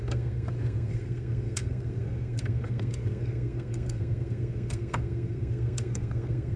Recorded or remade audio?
remade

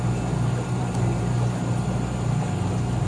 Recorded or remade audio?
recorded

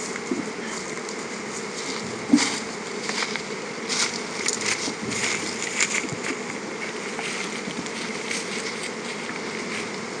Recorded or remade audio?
recorded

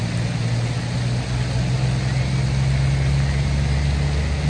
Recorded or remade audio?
recorded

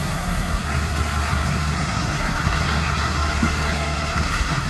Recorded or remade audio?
remade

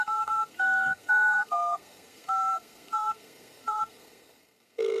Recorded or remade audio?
remade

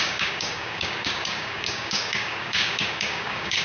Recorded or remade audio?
remade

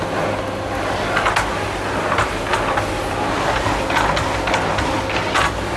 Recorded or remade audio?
recorded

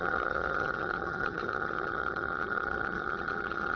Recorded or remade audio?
remade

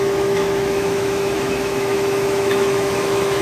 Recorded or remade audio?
remade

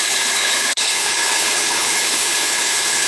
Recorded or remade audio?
remade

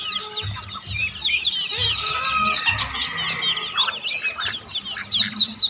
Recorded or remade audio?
recorded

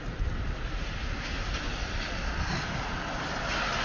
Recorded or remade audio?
recorded